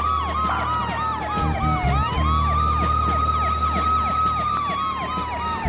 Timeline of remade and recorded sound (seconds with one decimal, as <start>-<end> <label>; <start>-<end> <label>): 0.0-5.7 recorded